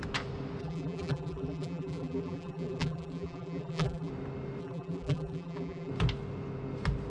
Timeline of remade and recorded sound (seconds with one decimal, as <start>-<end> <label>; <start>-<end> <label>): 0.0-0.6 recorded; 0.6-4.1 remade; 4.1-4.6 recorded; 4.6-5.9 remade; 5.9-7.1 recorded